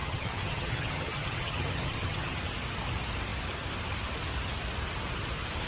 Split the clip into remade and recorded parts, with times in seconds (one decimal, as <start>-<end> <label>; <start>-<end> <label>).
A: 0.0-2.3 remade; 2.3-5.7 recorded